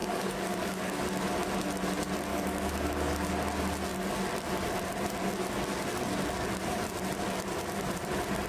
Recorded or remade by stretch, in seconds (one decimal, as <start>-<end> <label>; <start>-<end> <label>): 0.0-1.0 remade; 1.0-2.3 recorded; 2.3-3.3 remade; 3.3-8.5 recorded